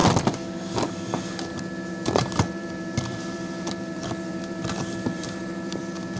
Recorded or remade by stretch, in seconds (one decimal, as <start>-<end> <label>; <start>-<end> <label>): 0.0-1.9 recorded; 1.9-6.2 remade